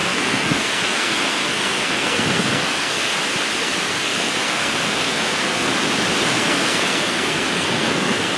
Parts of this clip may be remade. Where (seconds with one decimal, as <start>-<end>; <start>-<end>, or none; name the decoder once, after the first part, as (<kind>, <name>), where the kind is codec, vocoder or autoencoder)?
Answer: 0.0-3.1 (codec, SNAC); 3.6-5.7; 6.2-8.4